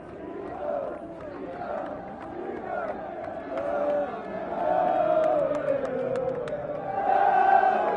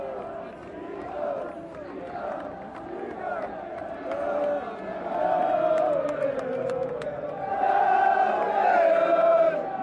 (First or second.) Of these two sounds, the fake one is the second